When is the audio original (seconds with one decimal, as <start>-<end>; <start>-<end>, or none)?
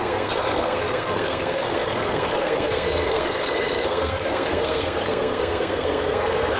none